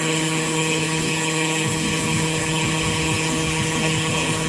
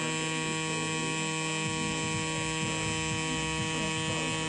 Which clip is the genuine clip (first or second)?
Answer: second